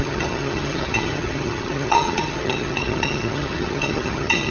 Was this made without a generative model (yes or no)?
no